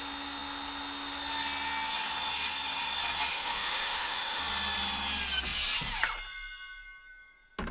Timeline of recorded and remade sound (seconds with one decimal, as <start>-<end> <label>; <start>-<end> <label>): 0.0-3.3 recorded; 3.3-4.4 remade; 4.4-7.7 recorded

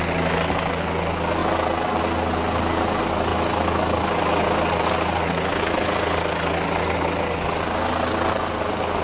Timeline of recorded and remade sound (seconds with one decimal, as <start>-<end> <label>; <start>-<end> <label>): 0.0-9.0 recorded